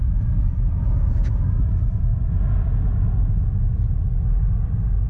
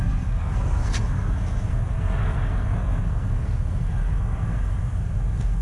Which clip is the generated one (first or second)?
second